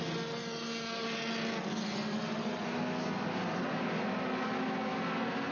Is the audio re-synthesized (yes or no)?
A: no